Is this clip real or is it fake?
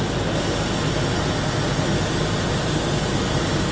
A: real